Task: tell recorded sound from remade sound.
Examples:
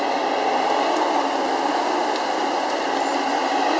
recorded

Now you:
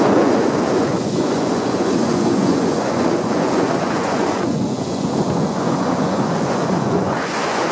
remade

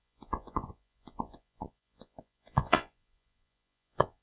remade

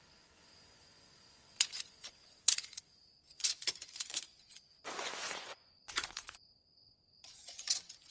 remade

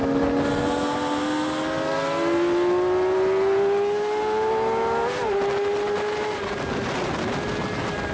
recorded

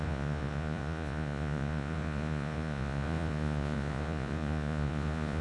remade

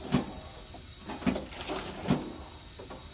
recorded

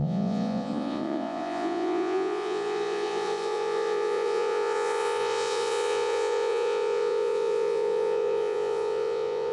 remade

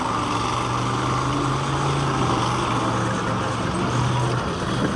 recorded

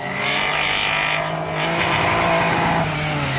recorded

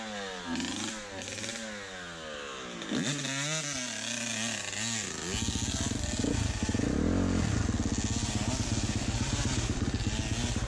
recorded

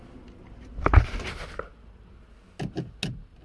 recorded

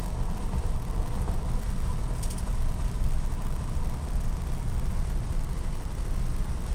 recorded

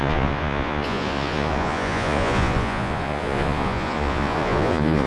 remade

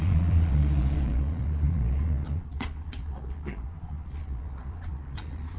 remade